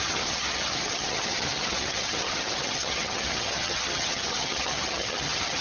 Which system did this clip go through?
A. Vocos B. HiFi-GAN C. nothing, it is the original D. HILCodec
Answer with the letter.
B